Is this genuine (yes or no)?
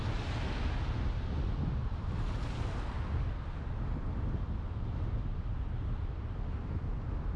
yes